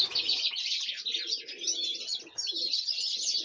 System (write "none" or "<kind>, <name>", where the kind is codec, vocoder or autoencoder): none